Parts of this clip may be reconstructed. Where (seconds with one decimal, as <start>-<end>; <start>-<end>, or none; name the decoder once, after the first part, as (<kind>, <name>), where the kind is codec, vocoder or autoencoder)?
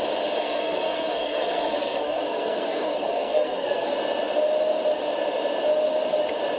0.4-3.9 (codec, SNAC)